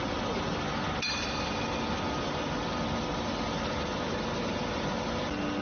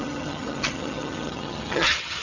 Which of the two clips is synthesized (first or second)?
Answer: second